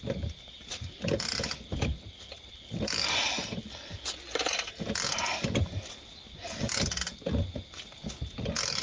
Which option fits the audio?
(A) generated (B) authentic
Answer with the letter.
B